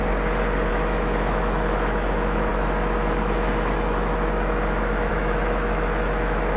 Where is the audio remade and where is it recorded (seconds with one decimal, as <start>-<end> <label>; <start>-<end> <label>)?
0.0-0.7 recorded; 0.7-6.6 remade

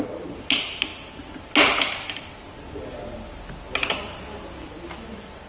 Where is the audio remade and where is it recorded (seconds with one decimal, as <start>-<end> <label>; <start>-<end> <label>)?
0.0-5.5 recorded

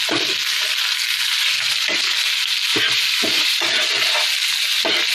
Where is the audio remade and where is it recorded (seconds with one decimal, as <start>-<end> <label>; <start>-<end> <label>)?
0.0-2.7 recorded; 2.7-3.6 remade; 3.6-5.1 recorded

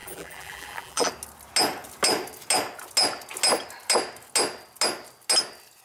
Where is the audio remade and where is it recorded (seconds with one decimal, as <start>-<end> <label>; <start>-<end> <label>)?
0.0-1.1 remade; 1.1-5.8 recorded